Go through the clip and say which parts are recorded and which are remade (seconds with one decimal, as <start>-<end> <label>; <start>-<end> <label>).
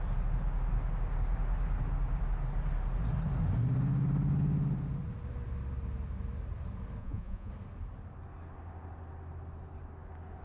0.0-7.0 recorded; 7.0-7.5 remade; 7.5-10.4 recorded